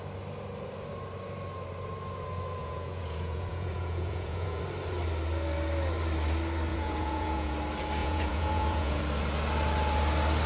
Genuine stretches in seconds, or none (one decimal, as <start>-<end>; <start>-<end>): 0.0-2.6; 4.6-6.7; 7.5-8.0; 9.0-10.5